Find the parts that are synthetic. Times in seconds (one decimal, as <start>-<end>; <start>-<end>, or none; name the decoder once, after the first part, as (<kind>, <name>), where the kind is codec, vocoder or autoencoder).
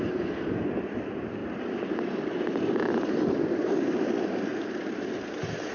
none